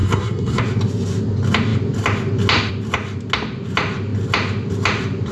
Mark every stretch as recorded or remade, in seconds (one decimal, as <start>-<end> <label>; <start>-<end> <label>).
0.0-0.6 remade; 0.6-5.3 recorded